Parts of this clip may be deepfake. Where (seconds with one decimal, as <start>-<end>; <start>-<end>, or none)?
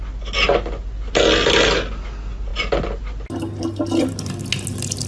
none